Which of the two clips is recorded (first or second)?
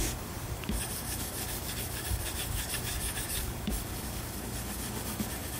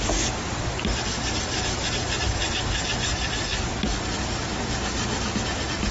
second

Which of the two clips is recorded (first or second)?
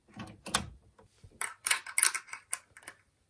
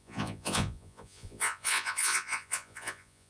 first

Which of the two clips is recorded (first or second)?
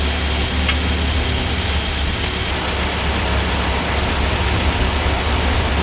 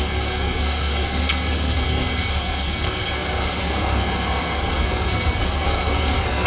first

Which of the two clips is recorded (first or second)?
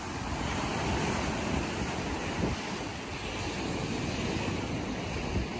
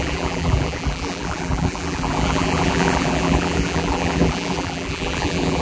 first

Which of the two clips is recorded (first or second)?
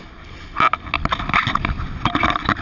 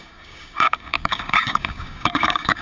first